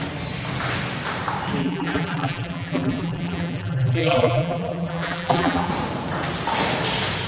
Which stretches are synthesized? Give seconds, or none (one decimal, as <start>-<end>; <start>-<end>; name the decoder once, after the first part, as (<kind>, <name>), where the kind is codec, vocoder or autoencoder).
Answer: 1.6-5.7 (vocoder, BigVGAN v2)